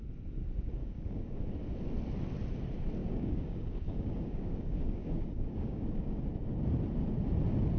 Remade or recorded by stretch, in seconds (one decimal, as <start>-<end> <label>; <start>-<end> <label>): 0.0-0.8 recorded; 0.8-1.4 remade; 1.4-3.0 recorded; 3.0-6.2 remade; 6.2-7.8 recorded